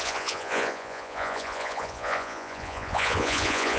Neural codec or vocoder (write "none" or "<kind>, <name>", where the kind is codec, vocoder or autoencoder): vocoder, Vocos